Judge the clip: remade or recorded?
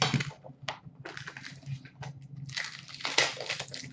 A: recorded